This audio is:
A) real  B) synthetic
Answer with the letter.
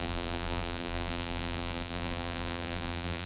B